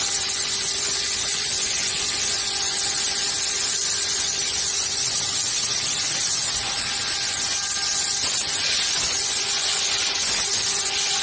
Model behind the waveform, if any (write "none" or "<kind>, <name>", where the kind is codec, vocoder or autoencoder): vocoder, Vocos